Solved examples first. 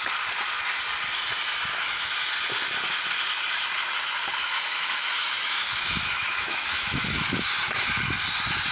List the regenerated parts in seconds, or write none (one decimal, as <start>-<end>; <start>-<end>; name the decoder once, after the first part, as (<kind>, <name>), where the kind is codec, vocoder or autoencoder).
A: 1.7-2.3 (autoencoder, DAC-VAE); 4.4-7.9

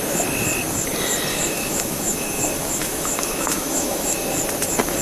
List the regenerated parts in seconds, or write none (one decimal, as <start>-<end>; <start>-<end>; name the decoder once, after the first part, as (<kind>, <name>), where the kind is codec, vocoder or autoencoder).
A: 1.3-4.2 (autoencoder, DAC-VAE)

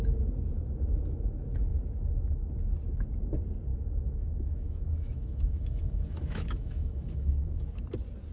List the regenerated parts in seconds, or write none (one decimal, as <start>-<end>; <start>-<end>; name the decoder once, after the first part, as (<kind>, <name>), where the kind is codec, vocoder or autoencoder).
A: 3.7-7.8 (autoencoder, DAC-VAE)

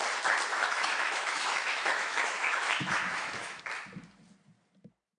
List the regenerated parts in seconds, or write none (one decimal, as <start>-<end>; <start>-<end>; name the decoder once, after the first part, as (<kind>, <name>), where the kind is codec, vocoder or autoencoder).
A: 0.5-3.6 (autoencoder, DAC-VAE)